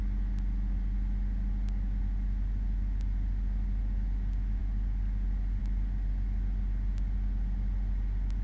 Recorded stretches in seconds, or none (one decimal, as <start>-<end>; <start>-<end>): 0.0-8.4